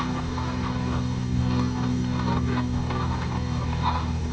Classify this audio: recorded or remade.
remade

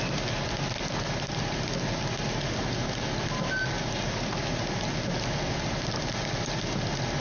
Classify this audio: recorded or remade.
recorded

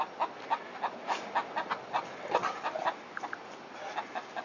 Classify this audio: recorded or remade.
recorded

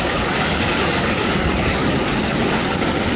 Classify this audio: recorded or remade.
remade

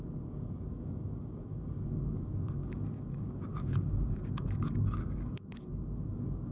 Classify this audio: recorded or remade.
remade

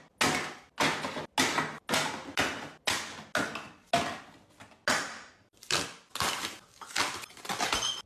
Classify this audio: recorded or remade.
recorded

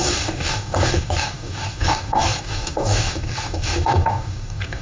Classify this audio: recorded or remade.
remade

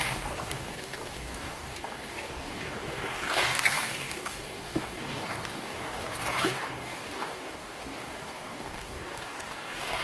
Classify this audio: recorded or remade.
remade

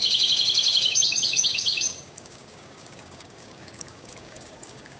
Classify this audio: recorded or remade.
remade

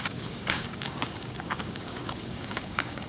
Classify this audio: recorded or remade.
remade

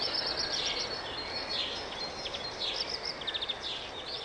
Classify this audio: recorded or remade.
recorded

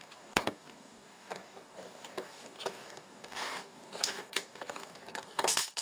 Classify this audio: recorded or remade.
remade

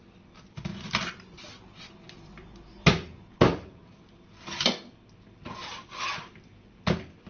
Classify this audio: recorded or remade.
recorded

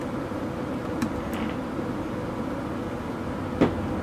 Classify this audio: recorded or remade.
recorded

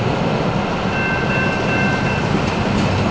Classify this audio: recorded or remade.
recorded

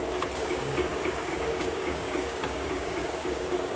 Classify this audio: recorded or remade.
remade